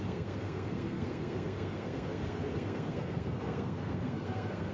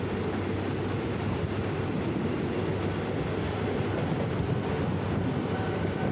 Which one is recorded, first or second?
second